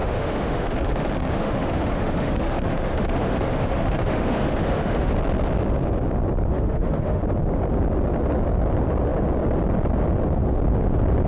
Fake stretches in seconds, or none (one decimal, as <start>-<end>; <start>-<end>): 0.0-5.1; 6.5-7.2